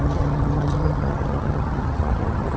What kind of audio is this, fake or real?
fake